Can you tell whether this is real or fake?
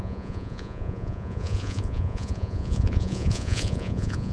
fake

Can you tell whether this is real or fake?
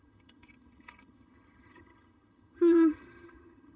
fake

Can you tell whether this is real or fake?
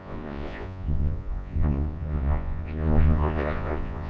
fake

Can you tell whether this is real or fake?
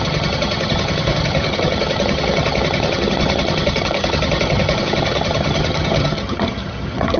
fake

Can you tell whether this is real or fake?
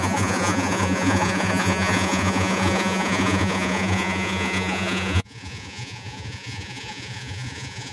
fake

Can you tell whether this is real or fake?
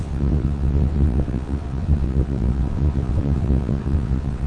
fake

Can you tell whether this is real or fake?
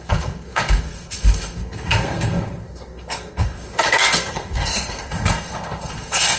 fake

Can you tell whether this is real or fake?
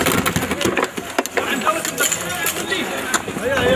real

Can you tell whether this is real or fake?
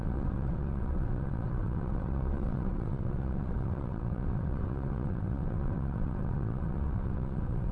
fake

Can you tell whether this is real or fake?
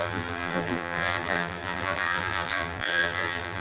fake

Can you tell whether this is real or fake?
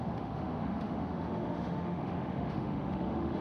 fake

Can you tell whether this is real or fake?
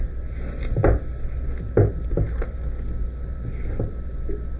real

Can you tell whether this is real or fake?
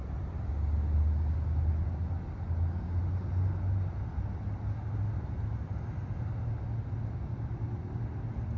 real